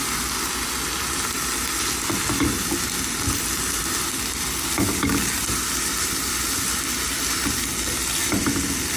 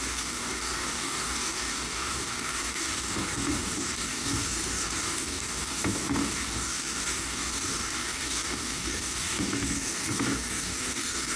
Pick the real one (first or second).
first